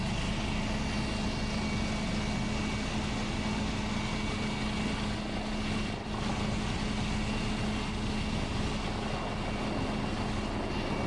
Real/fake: real